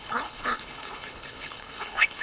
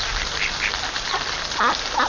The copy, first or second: first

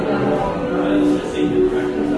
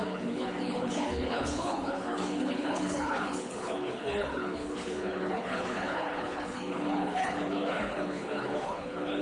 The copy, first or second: second